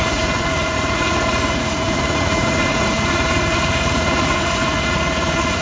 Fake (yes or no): yes